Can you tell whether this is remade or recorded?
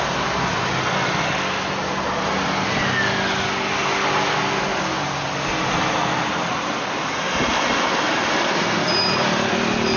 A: recorded